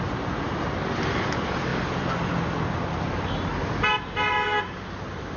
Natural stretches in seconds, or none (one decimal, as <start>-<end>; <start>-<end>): 0.0-5.4